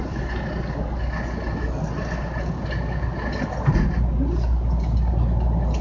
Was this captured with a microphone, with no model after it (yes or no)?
yes